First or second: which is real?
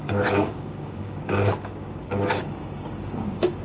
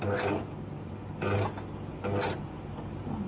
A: second